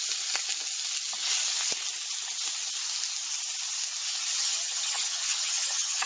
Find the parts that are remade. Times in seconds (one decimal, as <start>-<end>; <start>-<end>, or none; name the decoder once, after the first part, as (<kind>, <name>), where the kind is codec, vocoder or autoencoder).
4.4-6.1 (vocoder, HiFi-GAN)